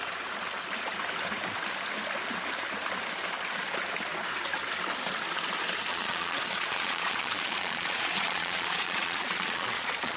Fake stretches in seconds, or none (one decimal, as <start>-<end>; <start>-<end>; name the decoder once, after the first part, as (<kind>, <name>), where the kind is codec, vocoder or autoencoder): 5.9-10.2 (vocoder, Vocos)